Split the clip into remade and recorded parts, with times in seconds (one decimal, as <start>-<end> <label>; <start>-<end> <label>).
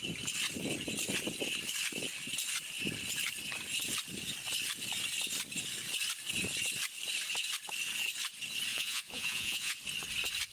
0.0-8.7 recorded; 8.7-9.8 remade; 9.8-10.5 recorded